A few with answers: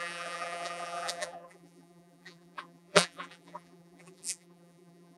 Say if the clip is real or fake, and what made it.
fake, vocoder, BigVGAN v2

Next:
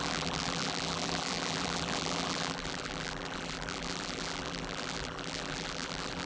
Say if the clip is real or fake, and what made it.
fake, vocoder, BigVGAN v2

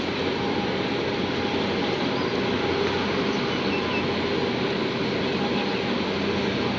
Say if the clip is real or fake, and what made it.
real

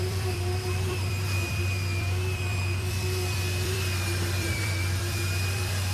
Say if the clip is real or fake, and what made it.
fake, vocoder, BigVGAN v2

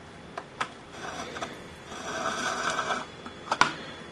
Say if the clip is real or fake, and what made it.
real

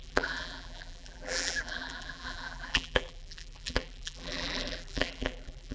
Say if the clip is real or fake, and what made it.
fake, vocoder, BigVGAN v2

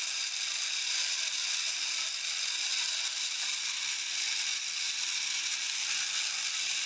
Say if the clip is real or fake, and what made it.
real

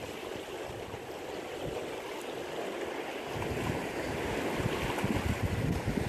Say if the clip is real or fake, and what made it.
real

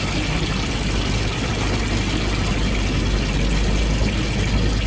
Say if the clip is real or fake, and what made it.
real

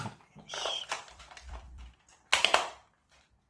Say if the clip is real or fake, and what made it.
fake, vocoder, BigVGAN v2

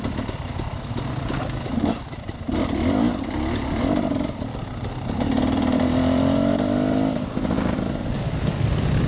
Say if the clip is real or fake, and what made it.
fake, vocoder, BigVGAN v2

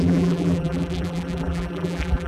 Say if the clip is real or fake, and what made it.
fake, vocoder, BigVGAN v2